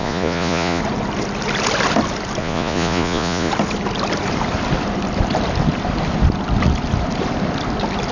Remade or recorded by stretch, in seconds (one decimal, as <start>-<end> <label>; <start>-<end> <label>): 0.0-0.8 remade; 0.8-2.4 recorded; 2.4-3.5 remade; 3.5-8.1 recorded